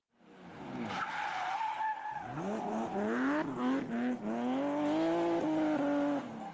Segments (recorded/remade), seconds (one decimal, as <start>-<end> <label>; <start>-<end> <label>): 0.0-6.5 recorded